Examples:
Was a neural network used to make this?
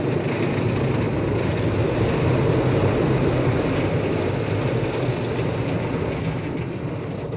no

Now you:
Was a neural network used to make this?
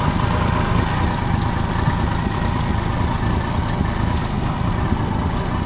no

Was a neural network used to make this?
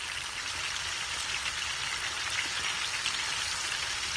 no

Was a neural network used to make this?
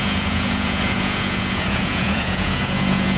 yes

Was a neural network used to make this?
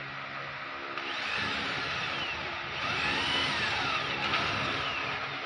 no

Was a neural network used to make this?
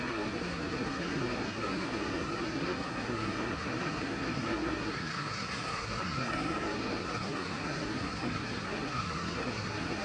yes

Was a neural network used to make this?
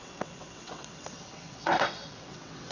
yes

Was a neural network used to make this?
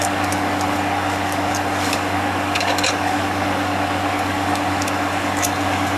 yes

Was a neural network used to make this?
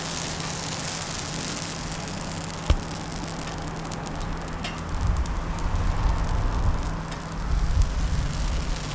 no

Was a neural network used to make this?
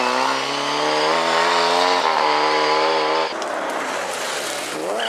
no